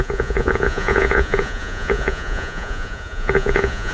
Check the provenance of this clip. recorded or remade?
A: remade